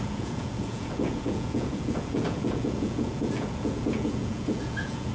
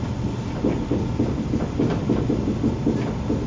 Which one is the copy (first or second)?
first